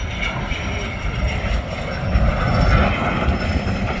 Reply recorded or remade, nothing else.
recorded